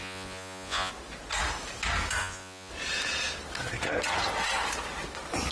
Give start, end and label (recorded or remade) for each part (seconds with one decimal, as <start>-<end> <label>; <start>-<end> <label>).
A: 0.0-0.9 remade; 0.9-2.2 recorded; 2.2-2.7 remade; 2.7-5.5 recorded

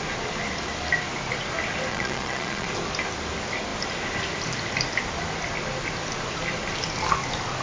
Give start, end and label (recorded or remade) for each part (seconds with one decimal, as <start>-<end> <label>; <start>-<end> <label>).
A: 0.0-1.9 recorded; 1.9-2.7 remade; 2.7-7.6 recorded

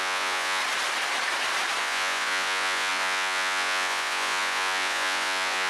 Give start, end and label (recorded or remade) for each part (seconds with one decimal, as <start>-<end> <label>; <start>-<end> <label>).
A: 0.0-0.6 remade; 0.6-1.8 recorded; 1.8-5.7 remade

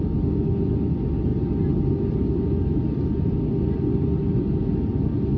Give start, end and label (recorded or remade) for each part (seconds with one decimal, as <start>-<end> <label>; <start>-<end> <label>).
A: 0.0-5.4 recorded

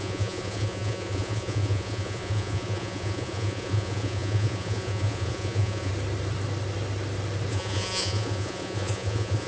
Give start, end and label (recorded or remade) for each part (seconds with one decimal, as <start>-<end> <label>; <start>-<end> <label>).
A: 0.0-5.9 remade; 5.9-7.5 recorded; 7.5-9.5 remade

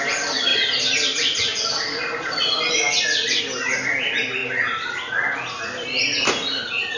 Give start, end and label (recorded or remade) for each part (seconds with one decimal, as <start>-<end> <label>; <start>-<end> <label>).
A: 0.0-7.0 recorded

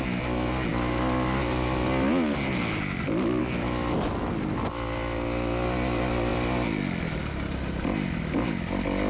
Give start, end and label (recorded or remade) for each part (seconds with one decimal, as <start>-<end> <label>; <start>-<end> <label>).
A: 0.0-9.1 recorded

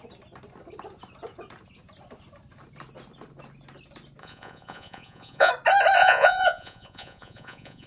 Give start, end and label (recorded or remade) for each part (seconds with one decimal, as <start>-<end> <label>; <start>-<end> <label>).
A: 0.0-4.2 recorded; 4.2-5.5 remade; 5.5-6.0 recorded; 6.0-7.9 remade